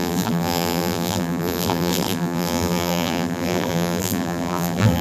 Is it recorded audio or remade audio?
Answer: remade